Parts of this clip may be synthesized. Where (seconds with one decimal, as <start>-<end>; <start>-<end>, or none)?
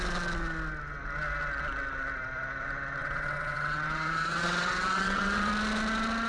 3.0-5.5